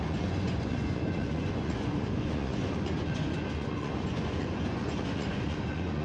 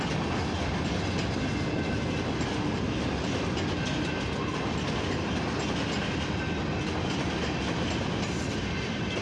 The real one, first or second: second